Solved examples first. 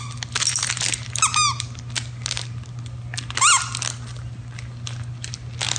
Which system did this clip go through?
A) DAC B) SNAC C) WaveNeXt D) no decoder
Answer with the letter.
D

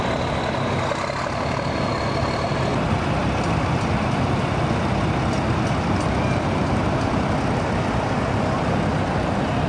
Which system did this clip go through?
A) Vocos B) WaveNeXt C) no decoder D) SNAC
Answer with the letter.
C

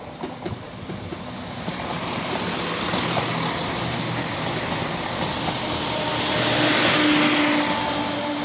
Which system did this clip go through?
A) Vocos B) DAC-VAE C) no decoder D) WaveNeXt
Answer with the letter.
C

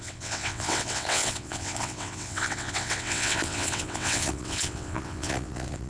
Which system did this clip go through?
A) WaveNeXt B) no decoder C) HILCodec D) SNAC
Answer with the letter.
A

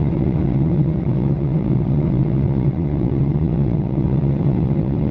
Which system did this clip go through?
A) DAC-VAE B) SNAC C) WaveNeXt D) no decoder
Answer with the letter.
C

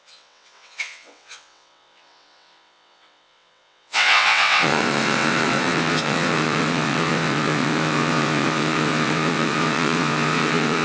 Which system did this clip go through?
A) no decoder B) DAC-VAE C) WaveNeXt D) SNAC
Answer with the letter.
C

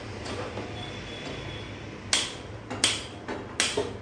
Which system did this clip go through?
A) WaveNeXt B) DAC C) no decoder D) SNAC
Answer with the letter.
C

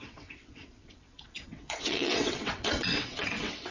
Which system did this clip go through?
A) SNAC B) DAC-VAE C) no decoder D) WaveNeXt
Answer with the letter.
D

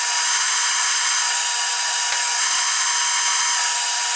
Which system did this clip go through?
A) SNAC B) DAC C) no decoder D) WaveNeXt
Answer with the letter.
C